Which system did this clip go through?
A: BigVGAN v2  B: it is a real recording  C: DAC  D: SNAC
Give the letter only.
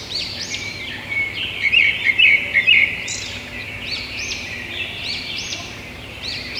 A